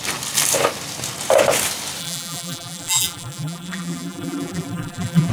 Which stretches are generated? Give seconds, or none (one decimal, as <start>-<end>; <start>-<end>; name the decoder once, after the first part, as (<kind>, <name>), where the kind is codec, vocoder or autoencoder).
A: 2.0-5.3 (vocoder, BigVGAN v2)